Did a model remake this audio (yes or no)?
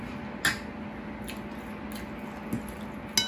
no